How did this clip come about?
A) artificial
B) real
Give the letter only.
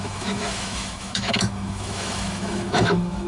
A